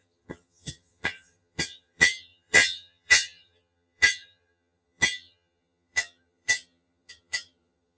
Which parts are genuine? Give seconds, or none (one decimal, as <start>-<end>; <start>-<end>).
none